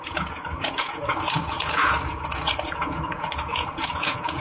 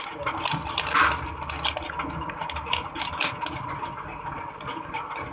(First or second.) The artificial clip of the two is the first